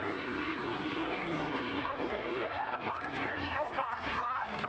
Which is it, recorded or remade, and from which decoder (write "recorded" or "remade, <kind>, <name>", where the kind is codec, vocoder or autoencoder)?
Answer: remade, codec, SNAC